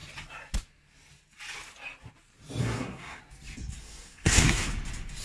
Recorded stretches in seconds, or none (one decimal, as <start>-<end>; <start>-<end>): 0.0-2.6; 3.2-3.8; 4.7-5.2